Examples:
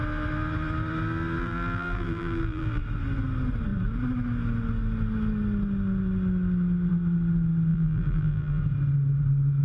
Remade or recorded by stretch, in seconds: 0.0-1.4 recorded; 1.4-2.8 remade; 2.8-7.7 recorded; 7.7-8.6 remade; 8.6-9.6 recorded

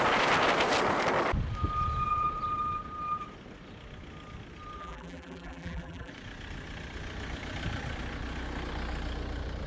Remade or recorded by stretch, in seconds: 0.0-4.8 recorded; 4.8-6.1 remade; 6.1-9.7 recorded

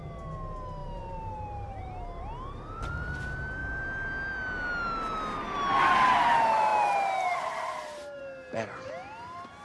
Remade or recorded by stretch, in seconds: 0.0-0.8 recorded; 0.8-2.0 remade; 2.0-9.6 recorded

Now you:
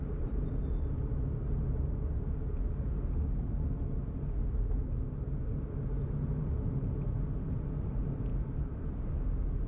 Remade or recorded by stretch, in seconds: 0.0-8.3 recorded; 8.3-9.0 remade; 9.0-9.7 recorded